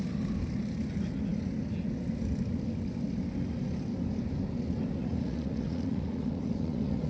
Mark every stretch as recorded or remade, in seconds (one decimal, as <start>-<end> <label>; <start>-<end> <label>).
0.0-5.0 recorded; 5.0-7.1 remade